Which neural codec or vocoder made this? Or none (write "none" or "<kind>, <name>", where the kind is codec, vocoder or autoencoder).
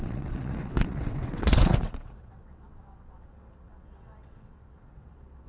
vocoder, WaveNeXt